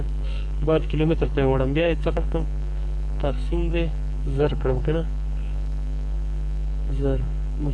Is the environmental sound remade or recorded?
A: remade